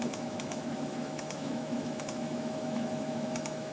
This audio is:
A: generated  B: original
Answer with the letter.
A